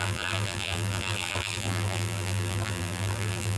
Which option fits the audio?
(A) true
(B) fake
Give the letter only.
B